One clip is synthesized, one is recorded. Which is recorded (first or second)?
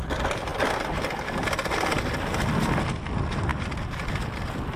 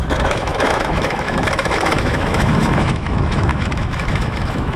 first